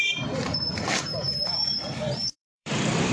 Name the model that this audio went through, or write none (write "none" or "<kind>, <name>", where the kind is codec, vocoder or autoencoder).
vocoder, BigVGAN v2